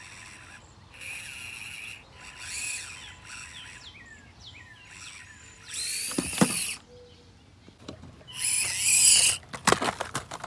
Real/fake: real